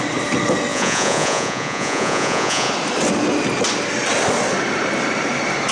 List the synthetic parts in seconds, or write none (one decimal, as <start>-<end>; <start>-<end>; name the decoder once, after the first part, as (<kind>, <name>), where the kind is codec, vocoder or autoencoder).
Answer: 0.7-2.7 (vocoder, Vocos)